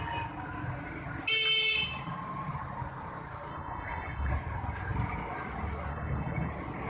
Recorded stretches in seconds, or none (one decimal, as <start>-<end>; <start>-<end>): 0.0-3.5; 4.3-5.9; 6.5-6.9